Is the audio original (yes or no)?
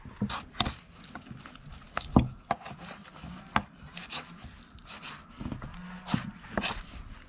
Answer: yes